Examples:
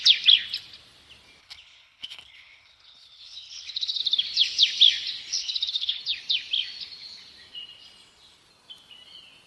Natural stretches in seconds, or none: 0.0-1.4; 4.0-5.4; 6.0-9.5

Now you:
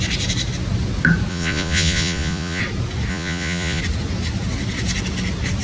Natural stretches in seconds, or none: 0.0-1.3; 2.6-3.1; 3.8-5.6

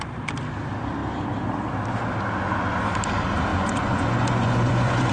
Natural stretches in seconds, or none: 0.0-3.5

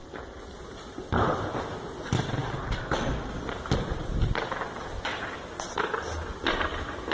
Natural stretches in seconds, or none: 0.0-7.1